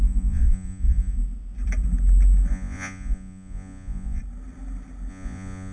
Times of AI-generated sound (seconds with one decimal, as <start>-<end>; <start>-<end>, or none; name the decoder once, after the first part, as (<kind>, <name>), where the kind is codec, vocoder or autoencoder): 0.0-1.2 (vocoder, Vocos); 2.5-4.2; 5.1-5.7